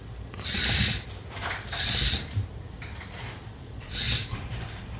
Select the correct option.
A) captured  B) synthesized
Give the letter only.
A